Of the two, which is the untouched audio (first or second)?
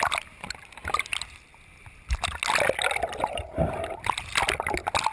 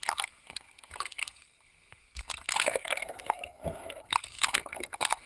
first